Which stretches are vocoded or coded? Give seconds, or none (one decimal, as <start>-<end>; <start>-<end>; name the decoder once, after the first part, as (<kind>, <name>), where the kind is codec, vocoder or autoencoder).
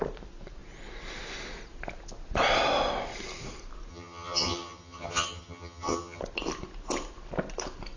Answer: 3.9-6.2 (vocoder, HiFi-GAN)